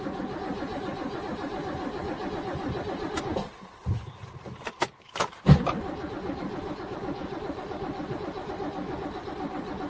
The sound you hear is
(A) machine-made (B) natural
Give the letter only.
A